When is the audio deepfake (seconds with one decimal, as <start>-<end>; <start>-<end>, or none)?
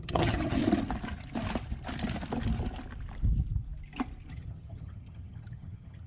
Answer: 0.0-0.6; 4.3-6.1